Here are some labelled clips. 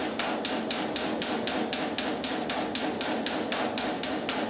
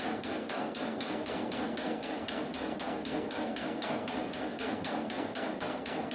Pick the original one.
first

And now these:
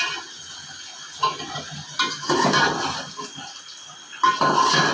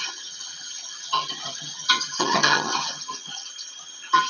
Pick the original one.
first